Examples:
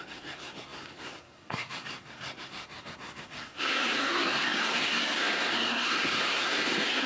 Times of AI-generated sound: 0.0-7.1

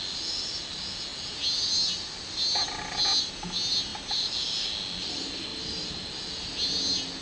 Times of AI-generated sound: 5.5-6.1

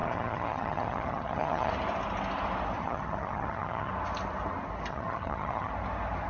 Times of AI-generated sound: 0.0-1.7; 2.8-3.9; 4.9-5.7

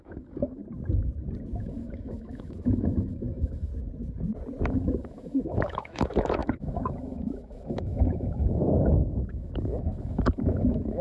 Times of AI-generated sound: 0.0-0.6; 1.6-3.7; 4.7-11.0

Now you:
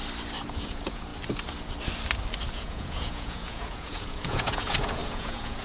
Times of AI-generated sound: 0.6-1.1; 2.5-5.6